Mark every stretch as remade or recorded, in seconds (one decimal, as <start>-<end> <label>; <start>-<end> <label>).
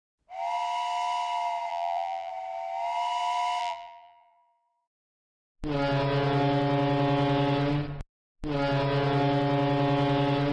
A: 0.0-1.7 recorded; 1.7-2.3 remade; 2.3-3.6 recorded; 3.6-5.1 remade; 5.1-10.5 recorded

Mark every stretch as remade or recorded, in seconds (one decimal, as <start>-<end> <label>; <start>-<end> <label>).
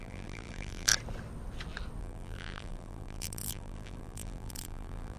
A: 0.0-0.9 remade; 0.9-2.0 recorded; 2.0-5.2 remade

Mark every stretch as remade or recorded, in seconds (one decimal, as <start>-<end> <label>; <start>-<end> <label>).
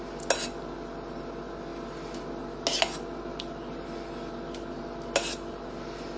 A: 0.0-6.2 recorded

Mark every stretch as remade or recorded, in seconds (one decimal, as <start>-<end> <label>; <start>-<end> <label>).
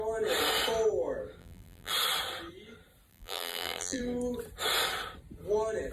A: 0.0-1.4 recorded; 1.4-1.9 remade; 1.9-3.1 recorded; 3.1-4.0 remade; 4.0-5.9 recorded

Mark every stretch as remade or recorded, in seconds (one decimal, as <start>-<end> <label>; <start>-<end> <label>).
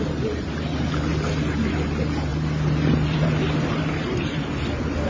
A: 0.0-1.1 remade; 1.1-1.7 recorded; 1.7-5.1 remade